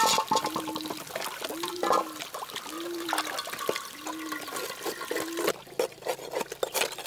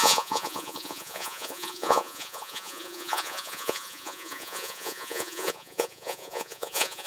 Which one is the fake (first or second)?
second